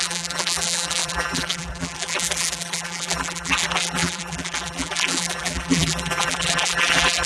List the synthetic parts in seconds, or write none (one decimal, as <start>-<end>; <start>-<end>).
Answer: 0.0-7.3